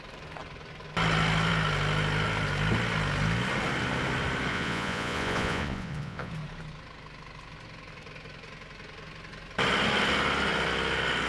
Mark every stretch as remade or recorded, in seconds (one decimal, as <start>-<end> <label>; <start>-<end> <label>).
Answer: 0.0-4.5 recorded; 4.5-6.3 remade; 6.3-11.3 recorded